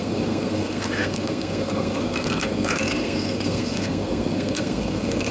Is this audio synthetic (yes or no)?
yes